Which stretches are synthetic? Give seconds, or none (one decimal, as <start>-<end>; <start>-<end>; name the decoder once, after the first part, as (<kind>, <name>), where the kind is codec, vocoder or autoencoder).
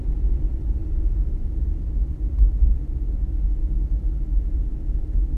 0.8-1.9 (vocoder, BigVGAN v2)